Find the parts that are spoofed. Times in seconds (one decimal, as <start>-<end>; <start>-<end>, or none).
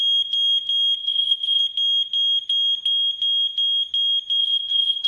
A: 1.0-1.6; 4.4-5.1